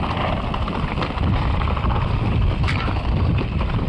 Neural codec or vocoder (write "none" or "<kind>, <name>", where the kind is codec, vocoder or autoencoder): none